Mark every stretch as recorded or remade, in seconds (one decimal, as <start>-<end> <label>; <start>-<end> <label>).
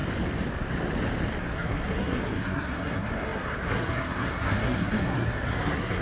0.0-1.4 recorded; 1.4-6.0 remade